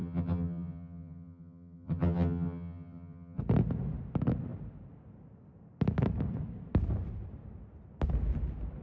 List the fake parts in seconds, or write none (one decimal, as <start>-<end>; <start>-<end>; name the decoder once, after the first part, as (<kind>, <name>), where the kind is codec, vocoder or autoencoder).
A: 0.0-3.4 (vocoder, HiFi-GAN)